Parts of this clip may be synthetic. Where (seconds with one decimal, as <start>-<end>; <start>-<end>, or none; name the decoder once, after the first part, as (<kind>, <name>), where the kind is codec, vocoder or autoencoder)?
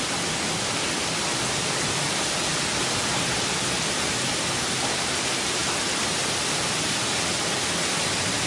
none